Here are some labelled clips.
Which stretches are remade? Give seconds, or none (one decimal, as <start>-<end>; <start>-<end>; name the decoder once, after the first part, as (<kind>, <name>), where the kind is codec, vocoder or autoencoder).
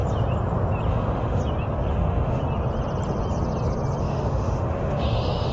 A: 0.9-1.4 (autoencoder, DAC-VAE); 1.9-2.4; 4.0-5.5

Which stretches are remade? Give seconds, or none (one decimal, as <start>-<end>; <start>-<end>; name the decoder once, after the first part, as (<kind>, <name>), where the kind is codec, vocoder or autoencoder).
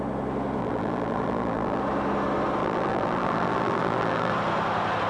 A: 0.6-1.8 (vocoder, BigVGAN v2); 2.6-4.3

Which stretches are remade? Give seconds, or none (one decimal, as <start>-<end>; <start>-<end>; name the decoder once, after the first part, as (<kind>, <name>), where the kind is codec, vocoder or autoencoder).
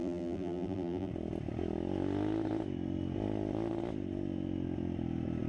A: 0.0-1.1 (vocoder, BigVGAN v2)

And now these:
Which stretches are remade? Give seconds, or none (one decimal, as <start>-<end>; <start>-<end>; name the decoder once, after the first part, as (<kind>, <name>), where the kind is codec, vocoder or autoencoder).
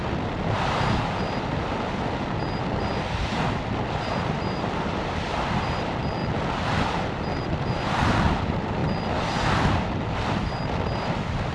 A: 0.0-6.2 (vocoder, BigVGAN v2); 6.8-8.8; 10.1-11.5